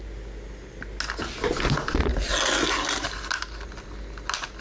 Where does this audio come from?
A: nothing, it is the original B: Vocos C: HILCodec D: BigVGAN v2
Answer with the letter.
A